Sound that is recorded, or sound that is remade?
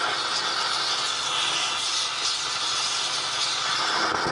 recorded